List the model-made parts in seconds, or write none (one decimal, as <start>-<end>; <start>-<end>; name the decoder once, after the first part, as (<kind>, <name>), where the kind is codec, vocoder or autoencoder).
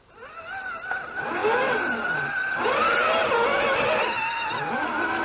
none